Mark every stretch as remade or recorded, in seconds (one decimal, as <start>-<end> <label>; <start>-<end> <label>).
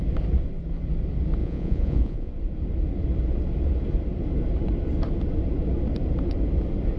0.0-1.4 recorded; 1.4-2.3 remade; 2.3-7.0 recorded